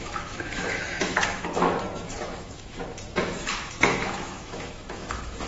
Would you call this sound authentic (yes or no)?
no